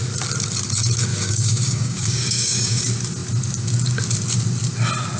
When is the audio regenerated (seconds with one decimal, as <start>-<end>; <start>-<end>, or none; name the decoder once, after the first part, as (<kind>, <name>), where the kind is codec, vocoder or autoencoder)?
1.1-2.8 (codec, DAC)